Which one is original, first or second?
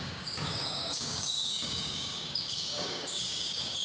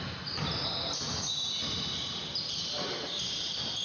second